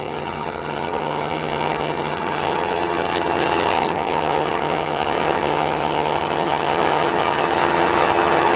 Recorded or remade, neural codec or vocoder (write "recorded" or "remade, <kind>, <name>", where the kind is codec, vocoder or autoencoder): remade, vocoder, HiFi-GAN